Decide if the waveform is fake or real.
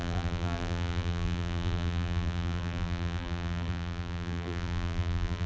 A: fake